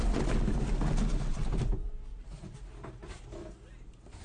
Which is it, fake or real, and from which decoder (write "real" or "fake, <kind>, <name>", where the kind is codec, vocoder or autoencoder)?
real